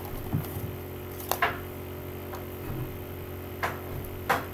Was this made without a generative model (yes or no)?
yes